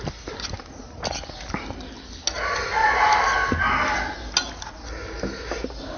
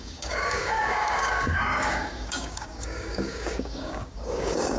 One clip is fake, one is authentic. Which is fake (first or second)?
second